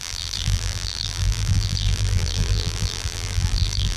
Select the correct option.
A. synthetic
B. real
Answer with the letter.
A